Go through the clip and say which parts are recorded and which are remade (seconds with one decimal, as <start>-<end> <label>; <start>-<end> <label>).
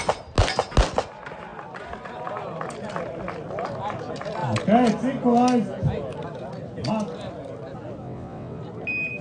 0.0-8.0 recorded; 8.0-8.6 remade; 8.6-9.2 recorded